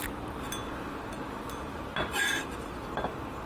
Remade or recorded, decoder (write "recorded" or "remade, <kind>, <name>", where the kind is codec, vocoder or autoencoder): recorded